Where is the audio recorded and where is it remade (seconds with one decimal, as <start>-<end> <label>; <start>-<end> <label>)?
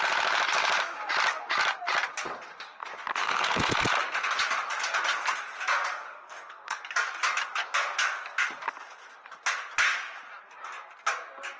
0.0-3.2 recorded; 3.2-3.7 remade; 3.7-6.1 recorded; 6.1-6.8 remade; 6.8-11.6 recorded